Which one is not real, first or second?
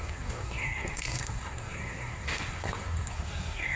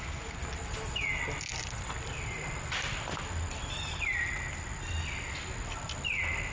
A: first